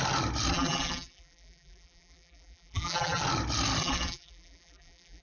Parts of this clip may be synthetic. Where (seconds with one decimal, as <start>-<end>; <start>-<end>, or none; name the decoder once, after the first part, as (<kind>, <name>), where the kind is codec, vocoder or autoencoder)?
0.5-3.2 (vocoder, BigVGAN v2); 3.8-5.2